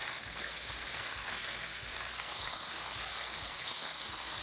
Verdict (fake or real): fake